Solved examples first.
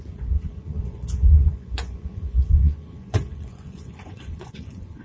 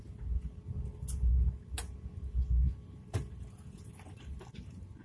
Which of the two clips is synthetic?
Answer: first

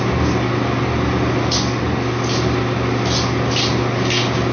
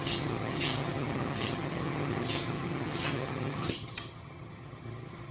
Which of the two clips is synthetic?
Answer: second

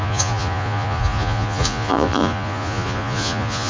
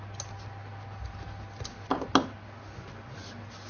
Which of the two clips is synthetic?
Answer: first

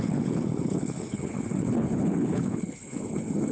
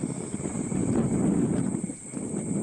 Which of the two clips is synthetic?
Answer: first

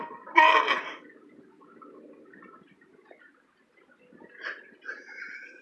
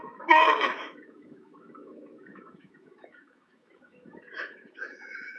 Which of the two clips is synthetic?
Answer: second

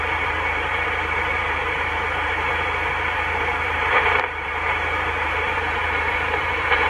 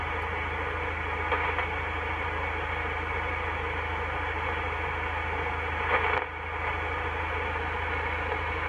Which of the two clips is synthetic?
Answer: first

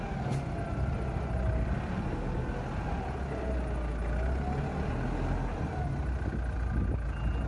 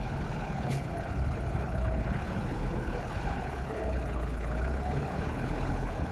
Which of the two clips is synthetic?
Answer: second